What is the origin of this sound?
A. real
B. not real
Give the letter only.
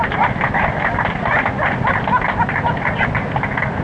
A